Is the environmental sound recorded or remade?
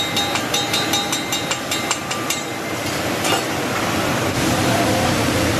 recorded